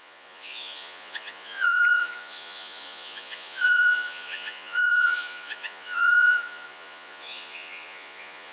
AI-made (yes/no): yes